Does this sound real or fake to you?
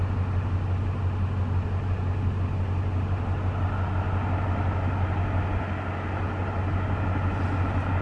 real